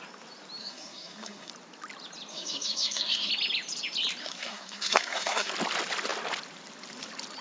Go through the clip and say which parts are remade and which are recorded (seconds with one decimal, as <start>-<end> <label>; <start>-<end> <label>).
0.0-0.6 recorded; 0.6-1.5 remade; 1.5-2.3 recorded; 2.3-3.3 remade; 3.3-4.2 recorded; 4.2-5.5 remade; 5.5-7.4 recorded